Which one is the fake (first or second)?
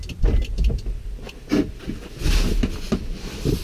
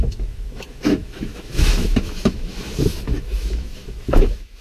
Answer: second